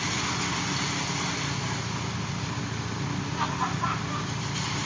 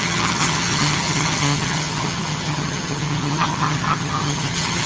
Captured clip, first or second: first